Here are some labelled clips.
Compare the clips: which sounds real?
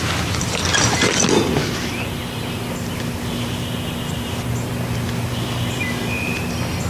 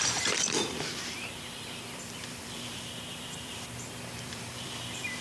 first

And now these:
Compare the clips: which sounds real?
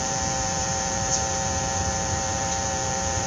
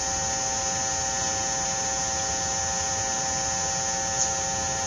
second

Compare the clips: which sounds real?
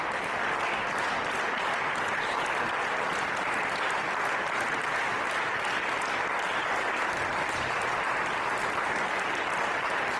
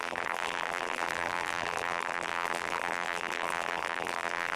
first